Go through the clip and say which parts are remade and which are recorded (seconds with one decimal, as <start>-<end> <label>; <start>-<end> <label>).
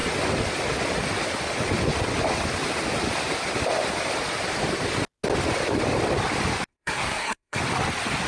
0.0-6.7 recorded; 6.7-7.6 remade; 7.6-8.3 recorded